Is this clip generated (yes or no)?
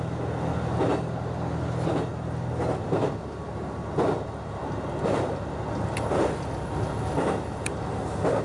no